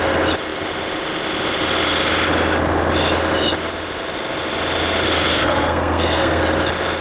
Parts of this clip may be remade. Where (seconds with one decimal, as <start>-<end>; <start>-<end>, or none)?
5.3-6.4